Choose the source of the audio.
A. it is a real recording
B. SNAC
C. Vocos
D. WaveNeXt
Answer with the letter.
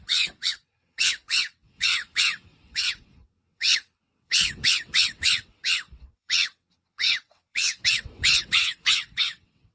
D